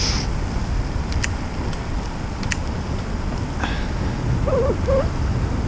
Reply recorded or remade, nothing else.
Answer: recorded